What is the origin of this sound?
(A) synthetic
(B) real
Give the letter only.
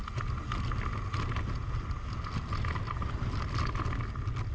B